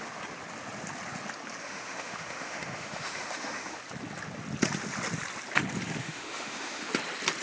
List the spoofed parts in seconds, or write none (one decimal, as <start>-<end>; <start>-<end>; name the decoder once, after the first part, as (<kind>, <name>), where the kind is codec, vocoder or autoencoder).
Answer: 1.6-3.8 (autoencoder, DAC-VAE); 6.0-6.9